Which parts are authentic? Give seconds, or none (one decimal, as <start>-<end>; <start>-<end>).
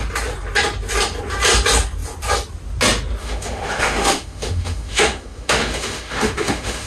0.0-3.2